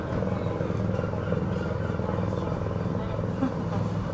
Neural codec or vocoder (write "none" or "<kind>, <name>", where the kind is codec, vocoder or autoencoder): none